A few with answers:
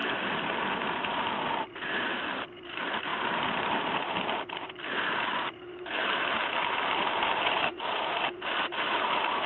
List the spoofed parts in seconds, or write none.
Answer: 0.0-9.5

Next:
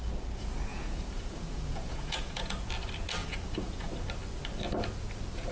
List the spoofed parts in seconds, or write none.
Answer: 0.7-2.7; 3.2-3.9